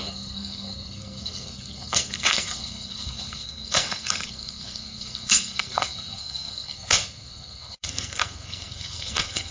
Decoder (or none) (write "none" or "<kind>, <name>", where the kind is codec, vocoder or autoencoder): codec, SNAC